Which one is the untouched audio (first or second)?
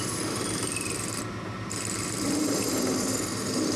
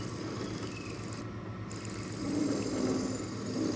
second